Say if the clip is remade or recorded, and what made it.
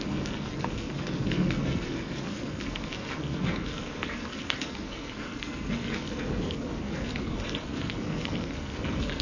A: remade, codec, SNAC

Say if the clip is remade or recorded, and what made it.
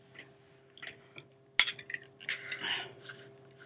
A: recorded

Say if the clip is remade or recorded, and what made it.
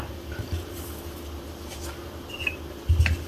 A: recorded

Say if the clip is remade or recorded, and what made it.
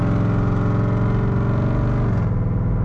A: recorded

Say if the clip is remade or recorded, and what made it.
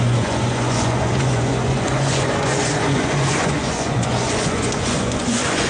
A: remade, vocoder, Vocos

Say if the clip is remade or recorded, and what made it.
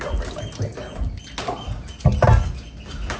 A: recorded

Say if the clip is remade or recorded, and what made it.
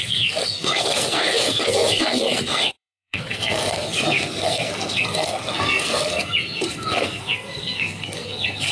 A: remade, codec, SNAC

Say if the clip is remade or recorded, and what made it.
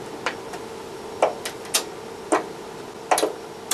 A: recorded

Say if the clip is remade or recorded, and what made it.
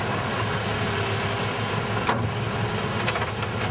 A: recorded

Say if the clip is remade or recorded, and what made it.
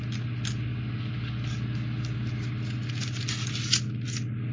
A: recorded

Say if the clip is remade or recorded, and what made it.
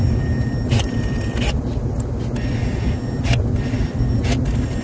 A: recorded